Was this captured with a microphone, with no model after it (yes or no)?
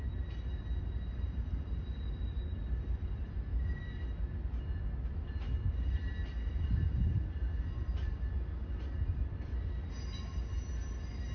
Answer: yes